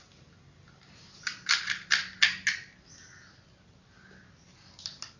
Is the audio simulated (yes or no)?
no